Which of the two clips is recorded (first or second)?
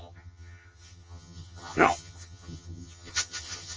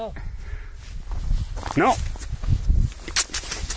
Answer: second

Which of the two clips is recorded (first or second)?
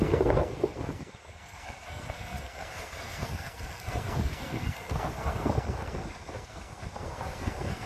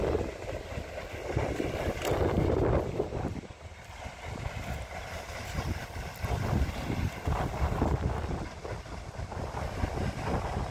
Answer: second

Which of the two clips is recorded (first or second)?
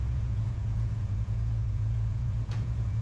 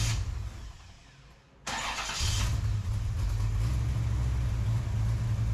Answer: second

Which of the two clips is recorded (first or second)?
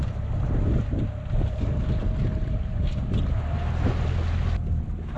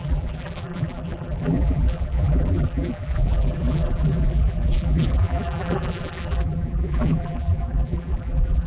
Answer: first